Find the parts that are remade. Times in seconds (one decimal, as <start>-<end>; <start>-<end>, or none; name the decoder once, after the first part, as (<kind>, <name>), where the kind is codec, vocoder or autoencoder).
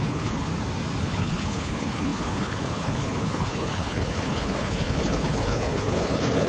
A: 0.0-0.5 (codec, HILCodec); 1.0-6.5